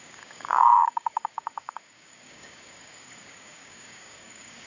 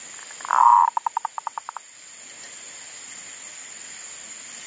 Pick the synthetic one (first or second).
first